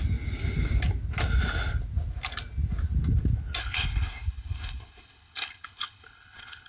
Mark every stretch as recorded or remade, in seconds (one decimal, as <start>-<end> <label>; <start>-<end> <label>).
0.0-3.6 recorded; 3.6-6.7 remade